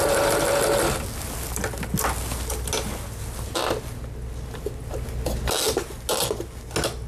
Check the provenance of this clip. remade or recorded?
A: recorded